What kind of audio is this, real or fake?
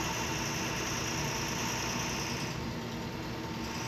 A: real